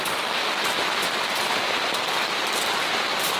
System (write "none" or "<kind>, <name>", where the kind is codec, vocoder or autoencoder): none